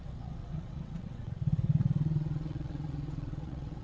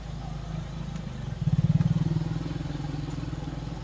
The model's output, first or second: first